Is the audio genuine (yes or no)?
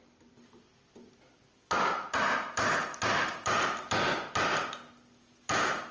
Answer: yes